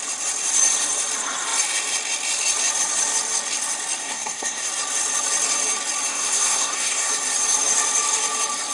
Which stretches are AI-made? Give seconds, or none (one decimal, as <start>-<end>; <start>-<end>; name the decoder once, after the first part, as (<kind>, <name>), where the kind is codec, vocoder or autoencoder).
4.0-4.7 (codec, SNAC); 6.1-7.1